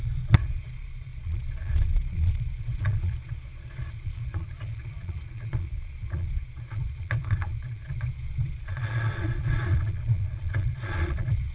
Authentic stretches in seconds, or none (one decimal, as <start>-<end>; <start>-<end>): none